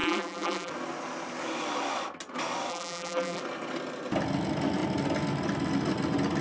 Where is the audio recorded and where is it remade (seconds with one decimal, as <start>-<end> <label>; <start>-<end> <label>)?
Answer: 0.0-0.7 remade; 0.7-2.7 recorded; 2.7-3.4 remade; 3.4-6.4 recorded